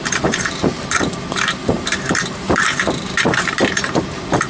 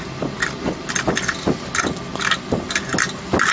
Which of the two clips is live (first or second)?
second